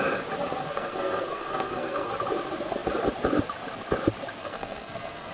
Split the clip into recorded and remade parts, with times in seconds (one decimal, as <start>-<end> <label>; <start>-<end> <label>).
0.0-0.6 recorded; 0.6-2.1 remade; 2.1-4.4 recorded; 4.4-5.3 remade